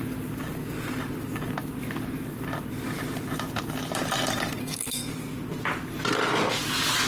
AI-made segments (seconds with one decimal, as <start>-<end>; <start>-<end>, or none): 4.6-5.1